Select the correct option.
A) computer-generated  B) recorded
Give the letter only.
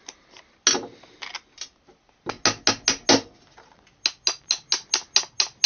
B